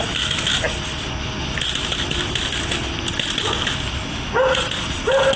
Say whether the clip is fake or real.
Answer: real